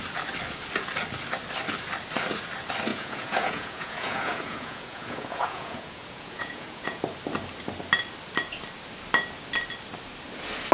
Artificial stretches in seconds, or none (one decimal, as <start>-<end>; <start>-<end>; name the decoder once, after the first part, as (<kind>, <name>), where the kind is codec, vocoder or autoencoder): 2.9-7.0 (vocoder, Vocos)